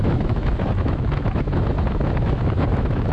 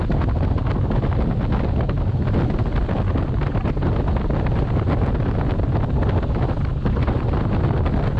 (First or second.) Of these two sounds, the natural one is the second